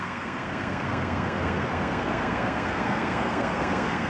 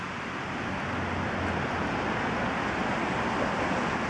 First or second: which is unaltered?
second